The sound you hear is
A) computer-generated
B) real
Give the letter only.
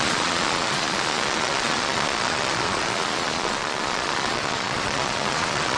A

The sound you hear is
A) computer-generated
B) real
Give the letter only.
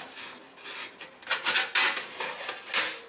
B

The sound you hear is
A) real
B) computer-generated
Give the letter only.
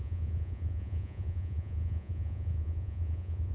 B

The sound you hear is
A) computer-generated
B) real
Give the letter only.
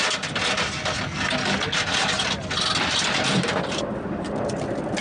B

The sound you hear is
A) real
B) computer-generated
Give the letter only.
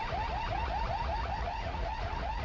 B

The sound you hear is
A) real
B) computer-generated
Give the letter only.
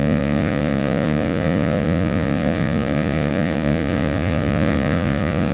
B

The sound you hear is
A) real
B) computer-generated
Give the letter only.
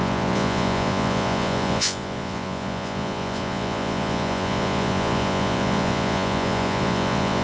B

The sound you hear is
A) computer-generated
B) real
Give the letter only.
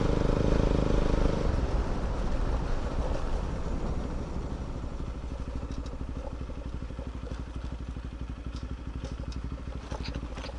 B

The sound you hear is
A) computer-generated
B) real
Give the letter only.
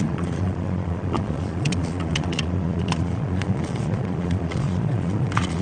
A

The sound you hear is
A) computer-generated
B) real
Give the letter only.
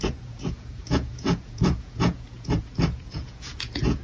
A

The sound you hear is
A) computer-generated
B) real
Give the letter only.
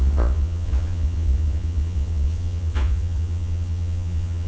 A